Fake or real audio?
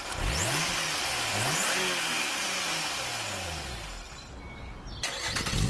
real